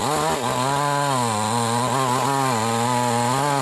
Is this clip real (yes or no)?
yes